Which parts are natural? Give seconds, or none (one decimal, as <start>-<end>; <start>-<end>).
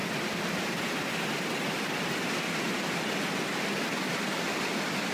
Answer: 0.0-5.1